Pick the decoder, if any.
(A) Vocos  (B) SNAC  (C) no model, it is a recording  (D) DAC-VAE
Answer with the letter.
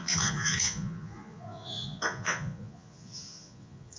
A